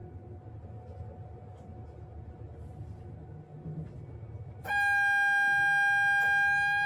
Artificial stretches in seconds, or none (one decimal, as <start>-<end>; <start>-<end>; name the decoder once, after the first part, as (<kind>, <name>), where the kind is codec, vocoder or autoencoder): none